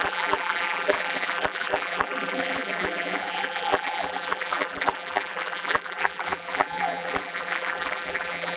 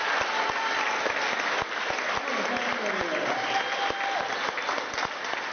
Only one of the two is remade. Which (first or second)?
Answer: first